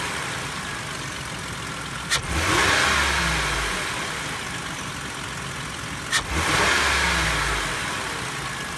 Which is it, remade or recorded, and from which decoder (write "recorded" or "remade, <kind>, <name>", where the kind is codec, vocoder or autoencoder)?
recorded